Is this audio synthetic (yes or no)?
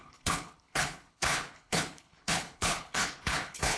yes